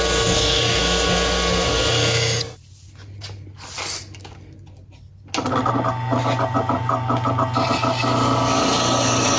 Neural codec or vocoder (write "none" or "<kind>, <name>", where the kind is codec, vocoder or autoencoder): none